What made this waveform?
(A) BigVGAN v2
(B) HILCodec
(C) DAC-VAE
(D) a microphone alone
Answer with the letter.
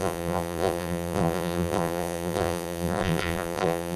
A